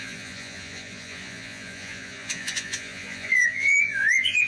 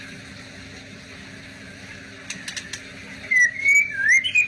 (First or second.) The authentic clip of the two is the second